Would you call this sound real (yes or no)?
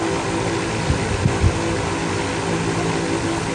yes